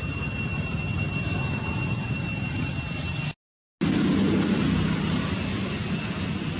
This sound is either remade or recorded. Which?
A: recorded